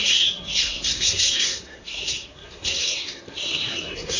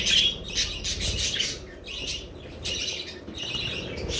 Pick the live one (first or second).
second